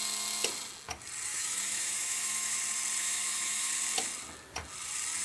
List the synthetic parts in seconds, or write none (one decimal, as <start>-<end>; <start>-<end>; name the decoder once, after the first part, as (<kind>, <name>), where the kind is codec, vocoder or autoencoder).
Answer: 1.3-2.6 (autoencoder, DAC-VAE); 3.0-3.7